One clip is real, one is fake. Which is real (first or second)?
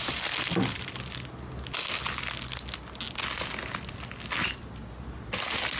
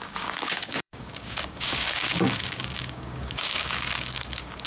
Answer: first